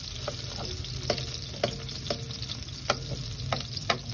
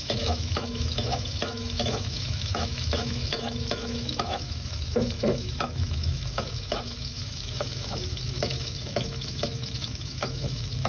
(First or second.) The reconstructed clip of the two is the second